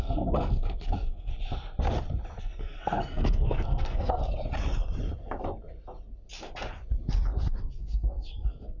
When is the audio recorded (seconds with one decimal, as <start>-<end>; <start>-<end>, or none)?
1.3-2.4; 4.2-7.7